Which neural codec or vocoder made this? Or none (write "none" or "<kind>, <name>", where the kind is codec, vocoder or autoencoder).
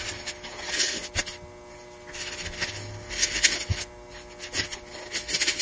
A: none